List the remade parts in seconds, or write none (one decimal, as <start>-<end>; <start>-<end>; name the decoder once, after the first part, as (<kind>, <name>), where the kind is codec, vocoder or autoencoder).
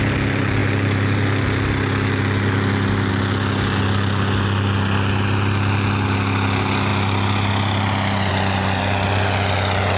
none